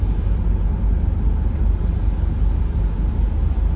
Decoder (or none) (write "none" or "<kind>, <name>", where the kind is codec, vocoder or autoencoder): none